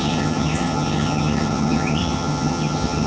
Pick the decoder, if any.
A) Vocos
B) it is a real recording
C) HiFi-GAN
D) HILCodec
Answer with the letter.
C